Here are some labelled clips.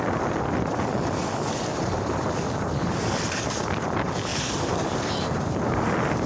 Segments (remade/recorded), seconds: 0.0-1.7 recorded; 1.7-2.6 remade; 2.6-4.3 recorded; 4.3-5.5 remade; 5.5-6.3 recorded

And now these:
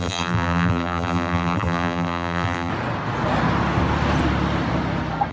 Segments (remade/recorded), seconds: 0.0-2.7 remade; 2.7-5.3 recorded

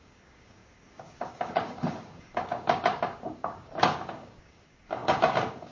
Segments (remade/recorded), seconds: 0.0-5.7 remade

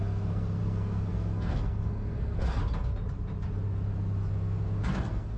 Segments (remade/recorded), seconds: 0.0-2.6 remade; 2.6-4.8 recorded; 4.8-5.4 remade

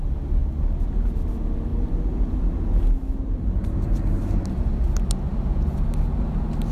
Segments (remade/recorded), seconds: 0.0-6.7 recorded